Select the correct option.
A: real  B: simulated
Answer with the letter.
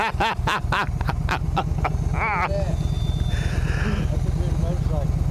A